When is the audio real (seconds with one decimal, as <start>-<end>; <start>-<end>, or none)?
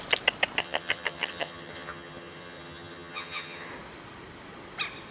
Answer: 0.0-0.6; 3.7-5.1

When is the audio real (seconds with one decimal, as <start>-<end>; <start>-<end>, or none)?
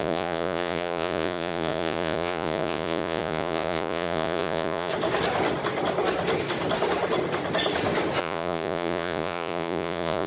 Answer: 4.9-8.2